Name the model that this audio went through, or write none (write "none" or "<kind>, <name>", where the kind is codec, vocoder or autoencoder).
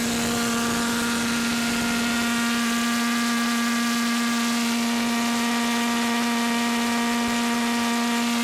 none